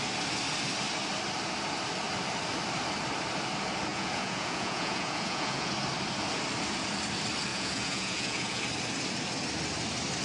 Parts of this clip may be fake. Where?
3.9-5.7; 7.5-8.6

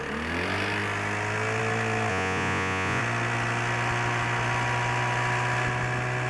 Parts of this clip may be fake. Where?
2.1-3.0

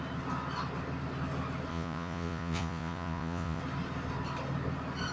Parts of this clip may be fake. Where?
1.7-3.6

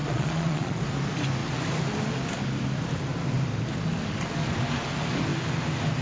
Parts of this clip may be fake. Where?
0.0-0.8

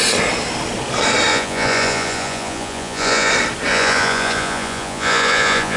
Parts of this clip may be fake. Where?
1.3-3.3; 3.7-5.8